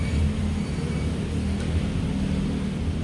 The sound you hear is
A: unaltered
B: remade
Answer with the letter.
A